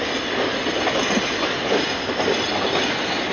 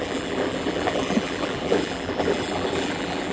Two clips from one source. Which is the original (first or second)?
first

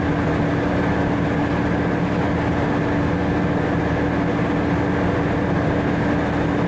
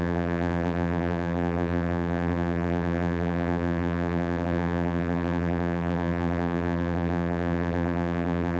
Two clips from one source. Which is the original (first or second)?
first